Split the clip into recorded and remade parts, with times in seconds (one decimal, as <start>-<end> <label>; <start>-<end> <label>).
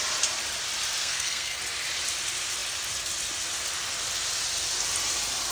0.0-1.0 recorded; 1.0-1.6 remade; 1.6-5.5 recorded